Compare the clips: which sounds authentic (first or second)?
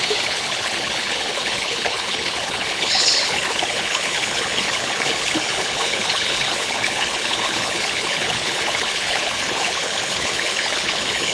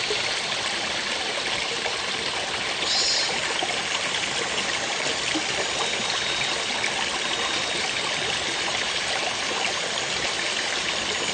second